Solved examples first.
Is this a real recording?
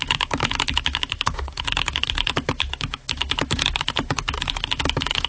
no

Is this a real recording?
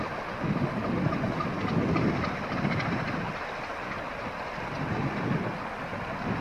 yes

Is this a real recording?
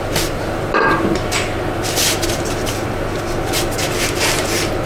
yes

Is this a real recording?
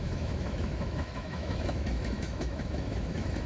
no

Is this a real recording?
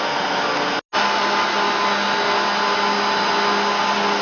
yes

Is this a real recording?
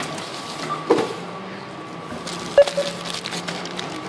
yes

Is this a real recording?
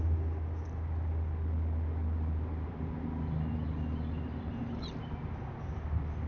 yes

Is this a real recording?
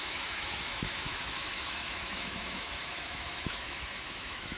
no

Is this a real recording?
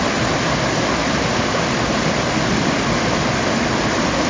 yes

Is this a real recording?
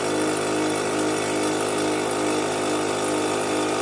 yes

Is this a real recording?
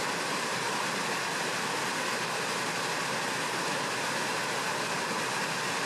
yes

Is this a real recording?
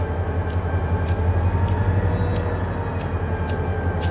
yes